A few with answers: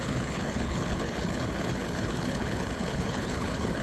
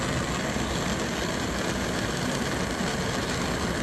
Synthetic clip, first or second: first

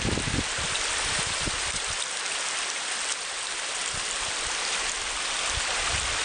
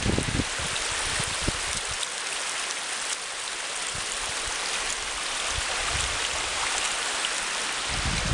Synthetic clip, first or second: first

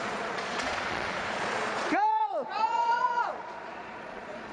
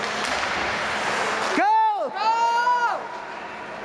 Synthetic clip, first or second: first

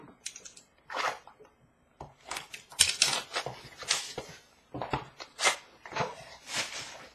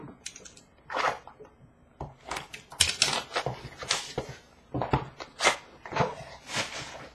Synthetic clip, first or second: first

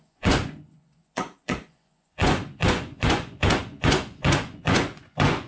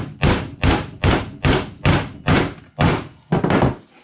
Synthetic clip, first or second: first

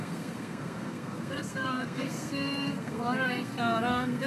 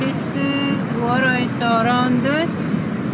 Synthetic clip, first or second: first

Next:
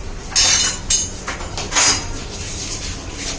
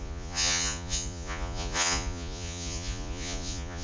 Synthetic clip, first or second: second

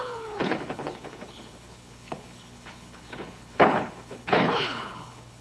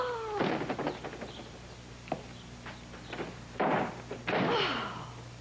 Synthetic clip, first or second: first